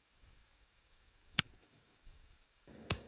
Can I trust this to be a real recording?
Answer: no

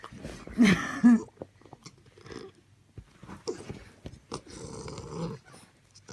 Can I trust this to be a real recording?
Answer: yes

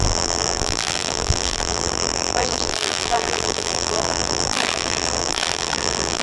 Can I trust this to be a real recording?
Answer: no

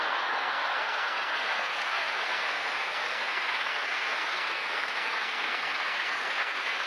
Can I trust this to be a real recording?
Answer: no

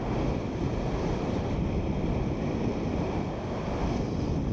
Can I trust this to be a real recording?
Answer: yes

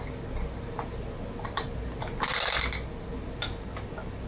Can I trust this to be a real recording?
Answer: yes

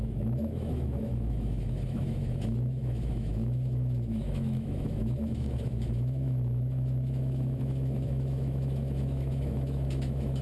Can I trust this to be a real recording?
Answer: no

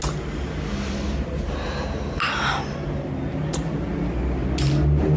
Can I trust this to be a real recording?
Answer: yes